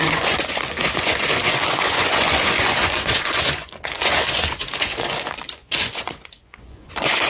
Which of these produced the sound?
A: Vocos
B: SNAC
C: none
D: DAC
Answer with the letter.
A